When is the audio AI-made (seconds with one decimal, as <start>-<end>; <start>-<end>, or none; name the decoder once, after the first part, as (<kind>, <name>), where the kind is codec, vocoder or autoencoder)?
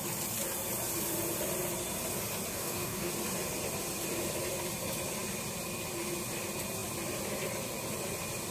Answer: 2.5-3.1 (codec, DAC)